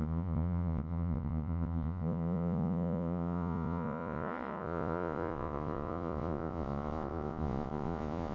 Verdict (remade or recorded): remade